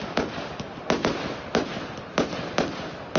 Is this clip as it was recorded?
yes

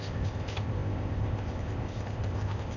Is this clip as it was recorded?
no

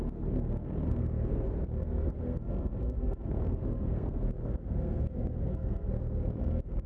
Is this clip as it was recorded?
no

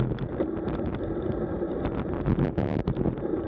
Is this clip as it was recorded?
no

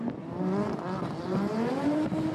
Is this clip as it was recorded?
yes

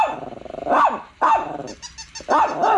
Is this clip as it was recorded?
yes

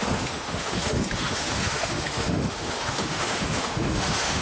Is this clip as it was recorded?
no